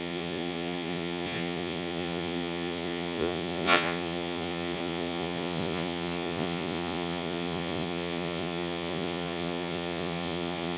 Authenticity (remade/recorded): remade